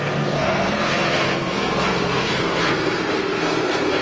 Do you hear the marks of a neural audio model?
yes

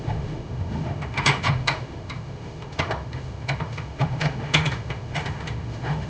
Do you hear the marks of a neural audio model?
yes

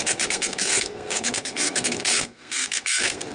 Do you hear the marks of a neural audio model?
yes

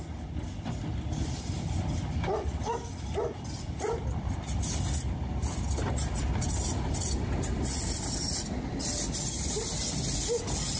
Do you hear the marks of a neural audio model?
no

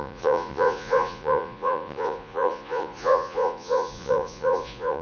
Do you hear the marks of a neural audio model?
yes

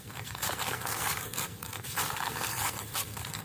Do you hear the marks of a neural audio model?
yes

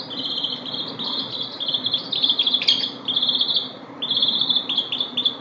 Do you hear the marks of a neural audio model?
no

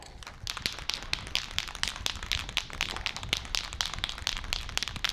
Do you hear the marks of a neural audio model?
no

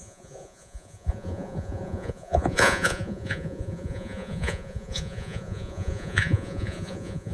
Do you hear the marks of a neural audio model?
yes